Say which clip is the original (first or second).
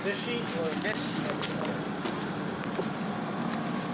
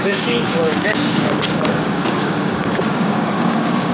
first